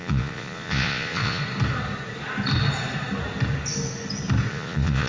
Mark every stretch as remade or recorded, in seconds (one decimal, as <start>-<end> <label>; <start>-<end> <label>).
0.0-1.4 remade; 1.4-4.5 recorded; 4.5-5.1 remade